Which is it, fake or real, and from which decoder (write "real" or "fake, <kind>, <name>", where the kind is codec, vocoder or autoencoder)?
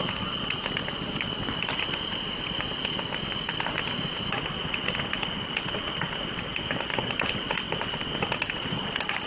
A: real